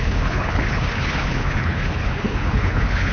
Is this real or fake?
fake